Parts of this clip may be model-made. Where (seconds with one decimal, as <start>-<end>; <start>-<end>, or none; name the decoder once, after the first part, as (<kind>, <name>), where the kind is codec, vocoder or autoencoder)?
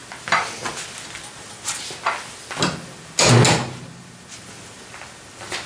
none